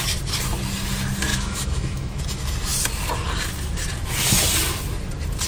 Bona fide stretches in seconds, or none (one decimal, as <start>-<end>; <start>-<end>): 0.0-1.3; 2.2-5.5